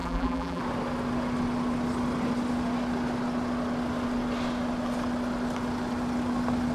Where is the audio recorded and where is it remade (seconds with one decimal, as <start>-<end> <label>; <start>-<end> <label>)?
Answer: 0.0-0.6 remade; 0.6-6.7 recorded